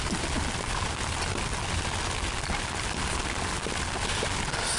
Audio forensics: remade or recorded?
recorded